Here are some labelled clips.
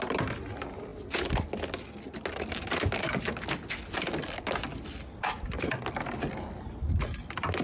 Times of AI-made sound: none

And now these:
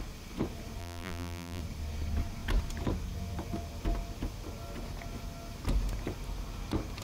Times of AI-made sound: 0.8-1.6

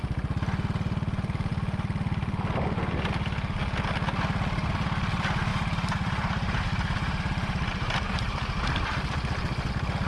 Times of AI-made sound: 5.5-9.7

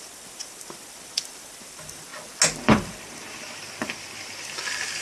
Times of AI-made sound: 0.0-2.1; 2.6-5.0

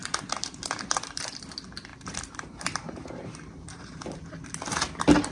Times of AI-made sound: 0.0-1.3; 1.9-4.3

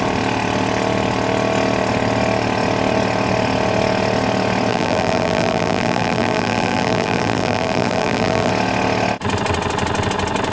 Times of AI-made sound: 4.7-8.5

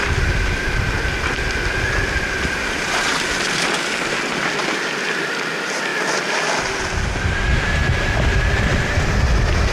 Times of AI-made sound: 0.0-0.6; 3.1-3.8

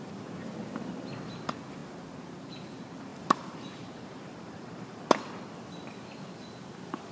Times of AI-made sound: 3.1-5.0